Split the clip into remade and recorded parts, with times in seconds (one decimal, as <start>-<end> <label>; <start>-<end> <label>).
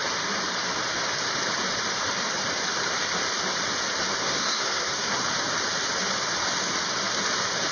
0.0-4.2 recorded; 4.2-5.2 remade; 5.2-7.7 recorded